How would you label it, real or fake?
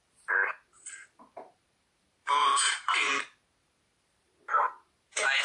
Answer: fake